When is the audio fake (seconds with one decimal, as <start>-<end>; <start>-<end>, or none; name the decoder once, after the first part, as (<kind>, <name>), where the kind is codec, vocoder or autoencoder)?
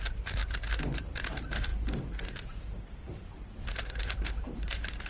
0.0-0.4 (vocoder, BigVGAN v2); 1.0-5.1